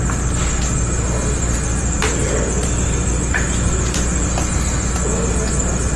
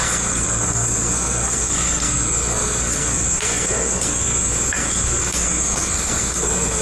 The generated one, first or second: second